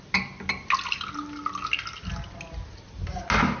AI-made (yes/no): no